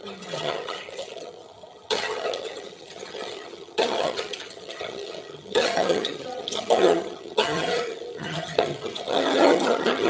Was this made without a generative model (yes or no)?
no